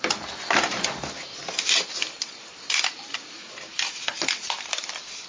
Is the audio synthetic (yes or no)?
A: no